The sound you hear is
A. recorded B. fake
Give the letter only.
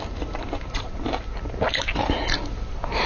A